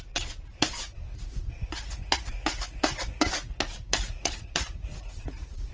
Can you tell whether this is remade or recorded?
remade